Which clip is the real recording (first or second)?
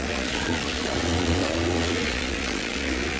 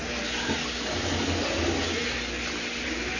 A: second